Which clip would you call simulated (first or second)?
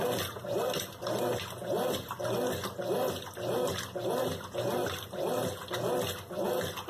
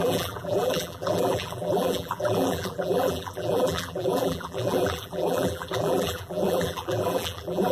second